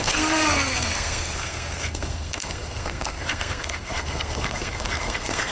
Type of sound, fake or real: fake